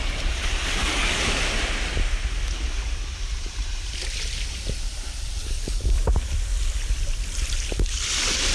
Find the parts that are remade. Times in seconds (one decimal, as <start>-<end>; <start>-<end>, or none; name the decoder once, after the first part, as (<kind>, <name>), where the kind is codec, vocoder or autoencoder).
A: 0.8-1.4 (codec, DAC); 5.4-6.1